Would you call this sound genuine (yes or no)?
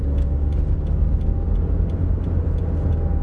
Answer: yes